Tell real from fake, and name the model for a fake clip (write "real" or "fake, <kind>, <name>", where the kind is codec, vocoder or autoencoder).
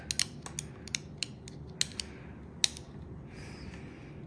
real